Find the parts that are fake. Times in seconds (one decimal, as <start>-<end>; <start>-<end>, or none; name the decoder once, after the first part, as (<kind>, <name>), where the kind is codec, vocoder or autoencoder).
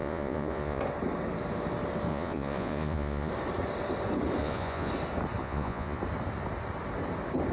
0.0-0.8 (vocoder, Vocos); 2.1-3.3; 4.4-4.9; 5.4-6.0